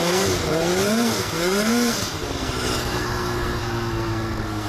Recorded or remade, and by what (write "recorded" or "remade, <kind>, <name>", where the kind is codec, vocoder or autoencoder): remade, codec, SNAC